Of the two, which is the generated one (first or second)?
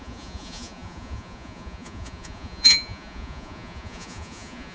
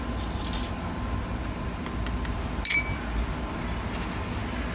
first